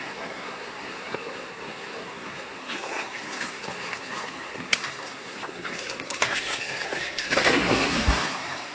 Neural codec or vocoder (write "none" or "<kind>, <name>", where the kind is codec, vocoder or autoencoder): codec, SNAC